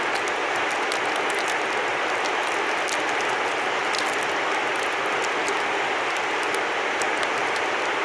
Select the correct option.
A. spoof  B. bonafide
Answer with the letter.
B